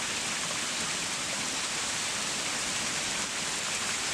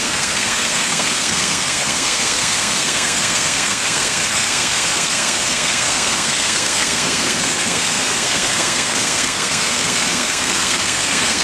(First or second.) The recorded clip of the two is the first